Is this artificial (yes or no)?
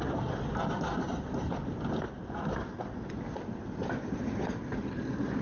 no